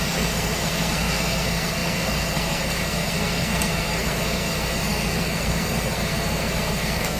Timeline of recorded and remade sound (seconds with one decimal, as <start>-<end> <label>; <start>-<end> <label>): 0.0-7.2 remade